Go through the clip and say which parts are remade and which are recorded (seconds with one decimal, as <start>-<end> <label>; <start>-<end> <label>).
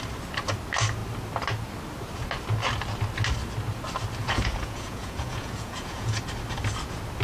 0.0-4.2 recorded; 4.2-6.2 remade; 6.2-7.2 recorded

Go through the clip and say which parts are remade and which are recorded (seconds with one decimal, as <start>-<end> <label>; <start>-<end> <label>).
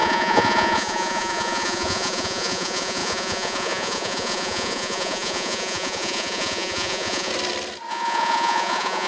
0.0-7.3 remade; 7.3-7.9 recorded; 7.9-9.1 remade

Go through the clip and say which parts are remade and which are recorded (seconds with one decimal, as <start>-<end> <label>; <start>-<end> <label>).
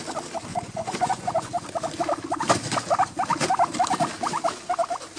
0.0-0.5 recorded; 0.5-1.6 remade; 1.6-5.2 recorded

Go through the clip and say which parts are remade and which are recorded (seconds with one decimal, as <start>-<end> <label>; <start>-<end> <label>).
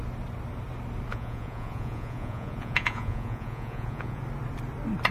0.0-1.1 recorded; 1.1-4.2 remade; 4.2-5.1 recorded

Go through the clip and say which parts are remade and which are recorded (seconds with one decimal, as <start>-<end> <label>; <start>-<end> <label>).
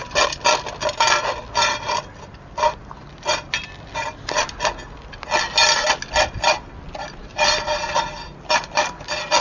0.0-9.4 recorded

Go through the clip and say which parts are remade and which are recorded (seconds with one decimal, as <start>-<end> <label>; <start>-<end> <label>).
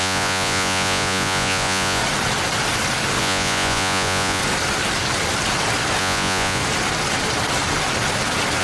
0.0-2.0 remade; 2.0-3.2 recorded; 3.2-4.4 remade; 4.4-6.0 recorded; 6.0-6.6 remade; 6.6-8.6 recorded